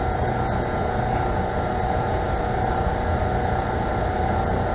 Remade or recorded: recorded